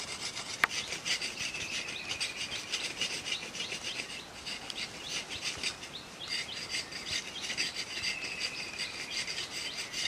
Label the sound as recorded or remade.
recorded